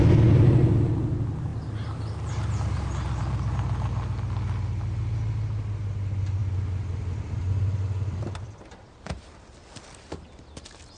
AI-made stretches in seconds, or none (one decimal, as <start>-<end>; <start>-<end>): none